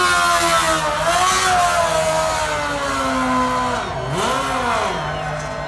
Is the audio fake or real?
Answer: real